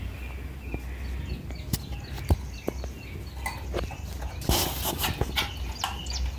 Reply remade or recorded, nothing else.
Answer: recorded